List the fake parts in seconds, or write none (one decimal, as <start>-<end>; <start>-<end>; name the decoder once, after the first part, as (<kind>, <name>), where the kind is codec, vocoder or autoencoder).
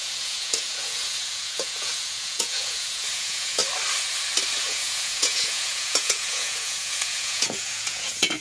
0.0-3.6 (vocoder, Vocos); 4.6-8.4